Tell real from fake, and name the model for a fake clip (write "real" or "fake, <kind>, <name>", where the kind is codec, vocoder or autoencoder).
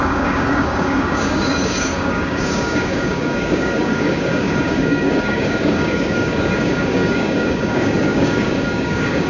fake, codec, DAC